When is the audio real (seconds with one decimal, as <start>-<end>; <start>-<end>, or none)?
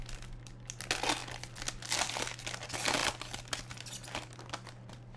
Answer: 0.0-5.2